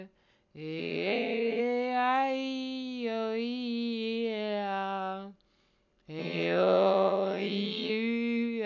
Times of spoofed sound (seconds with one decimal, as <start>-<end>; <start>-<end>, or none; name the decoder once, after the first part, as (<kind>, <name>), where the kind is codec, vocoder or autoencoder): 0.8-1.6 (vocoder, HiFi-GAN); 6.2-7.9

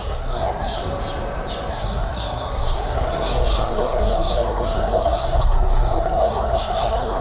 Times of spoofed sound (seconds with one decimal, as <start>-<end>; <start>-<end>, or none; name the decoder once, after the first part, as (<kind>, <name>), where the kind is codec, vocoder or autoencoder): 0.0-0.8 (codec, SNAC); 1.7-7.2

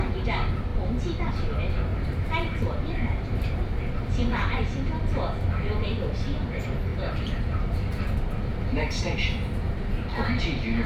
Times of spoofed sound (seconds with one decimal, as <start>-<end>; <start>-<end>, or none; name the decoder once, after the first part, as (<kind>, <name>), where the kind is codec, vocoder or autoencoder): 1.9-5.2 (vocoder, BigVGAN v2); 6.9-8.0; 8.5-9.0

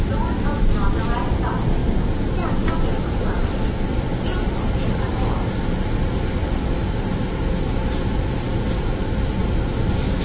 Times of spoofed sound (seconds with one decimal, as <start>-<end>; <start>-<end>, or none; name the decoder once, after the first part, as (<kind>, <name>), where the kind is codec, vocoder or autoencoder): 4.3-4.9 (vocoder, BigVGAN v2); 9.4-10.2

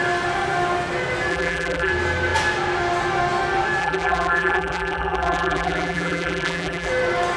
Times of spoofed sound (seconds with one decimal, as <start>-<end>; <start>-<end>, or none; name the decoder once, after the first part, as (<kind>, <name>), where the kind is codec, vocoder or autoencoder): 1.3-1.9 (vocoder, BigVGAN v2); 3.8-6.9

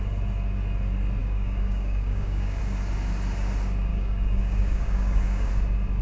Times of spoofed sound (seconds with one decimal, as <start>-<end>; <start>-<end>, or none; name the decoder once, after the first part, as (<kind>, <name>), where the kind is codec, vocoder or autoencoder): 1.2-2.6 (codec, DAC); 3.9-5.5

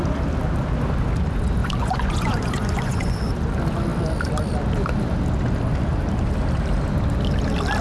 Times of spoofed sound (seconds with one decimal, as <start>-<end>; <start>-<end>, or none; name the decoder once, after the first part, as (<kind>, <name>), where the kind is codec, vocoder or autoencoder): 1.6-3.3 (vocoder, Vocos)